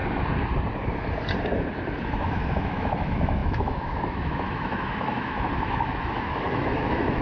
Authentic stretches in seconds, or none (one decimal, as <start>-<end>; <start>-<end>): 0.0-2.1

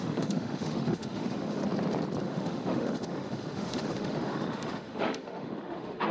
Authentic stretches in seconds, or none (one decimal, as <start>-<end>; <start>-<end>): 1.6-2.2

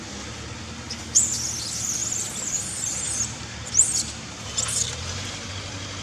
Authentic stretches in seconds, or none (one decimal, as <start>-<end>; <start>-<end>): 0.0-6.0

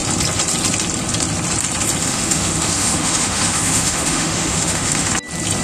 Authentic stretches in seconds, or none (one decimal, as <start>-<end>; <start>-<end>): 0.0-2.0; 5.1-5.6

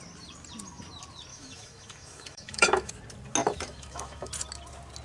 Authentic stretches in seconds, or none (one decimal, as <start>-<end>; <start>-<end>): 0.0-1.3; 2.9-3.4; 4.3-5.0

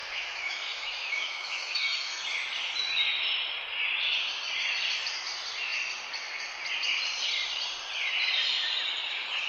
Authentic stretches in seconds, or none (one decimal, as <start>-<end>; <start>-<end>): 2.1-9.5

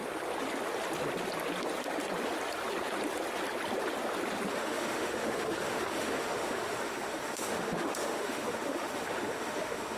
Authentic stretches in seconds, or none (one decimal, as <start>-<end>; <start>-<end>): 0.0-4.5